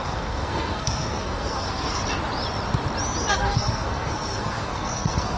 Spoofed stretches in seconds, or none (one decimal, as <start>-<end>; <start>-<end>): 0.0-2.0; 3.3-5.4